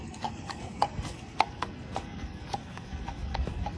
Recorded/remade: remade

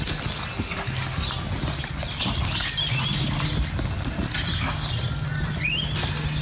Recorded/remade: recorded